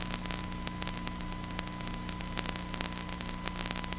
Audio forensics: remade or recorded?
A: recorded